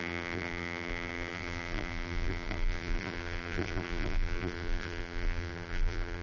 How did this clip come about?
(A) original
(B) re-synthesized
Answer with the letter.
B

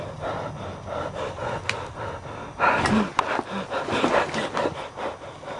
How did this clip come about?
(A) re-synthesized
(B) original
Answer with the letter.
B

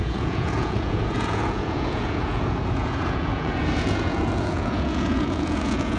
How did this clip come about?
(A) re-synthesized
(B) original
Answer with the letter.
A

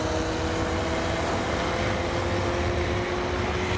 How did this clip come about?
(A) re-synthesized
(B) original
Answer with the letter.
B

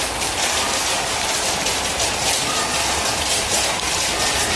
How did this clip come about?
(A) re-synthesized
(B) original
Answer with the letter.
B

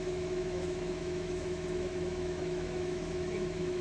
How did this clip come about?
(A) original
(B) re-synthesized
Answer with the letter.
B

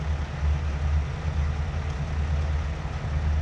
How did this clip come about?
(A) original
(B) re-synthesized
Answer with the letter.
A